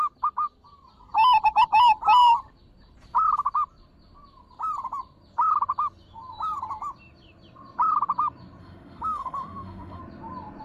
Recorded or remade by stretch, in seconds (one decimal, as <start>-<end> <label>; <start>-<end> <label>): 0.0-8.6 recorded; 8.6-10.0 remade; 10.0-10.6 recorded